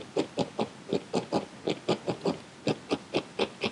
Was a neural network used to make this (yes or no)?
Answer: no